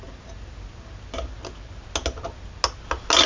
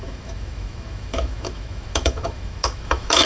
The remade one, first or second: second